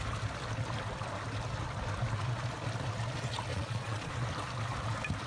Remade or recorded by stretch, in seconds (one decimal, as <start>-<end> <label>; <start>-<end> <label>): 0.0-3.5 recorded; 3.5-4.1 remade; 4.1-5.3 recorded